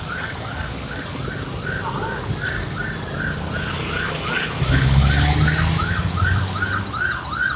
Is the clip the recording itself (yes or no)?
yes